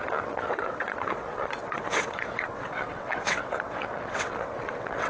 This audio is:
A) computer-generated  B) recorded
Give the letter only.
A